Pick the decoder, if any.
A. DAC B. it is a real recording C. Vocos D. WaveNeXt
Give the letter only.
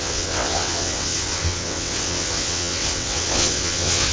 D